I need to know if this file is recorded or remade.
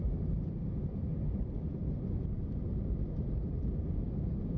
remade